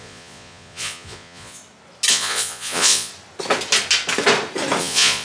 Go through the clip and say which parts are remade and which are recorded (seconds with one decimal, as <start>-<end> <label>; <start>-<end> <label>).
0.0-1.6 remade; 1.6-2.1 recorded; 2.1-3.1 remade; 3.1-4.8 recorded; 4.8-5.2 remade